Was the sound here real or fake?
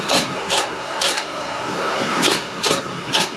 fake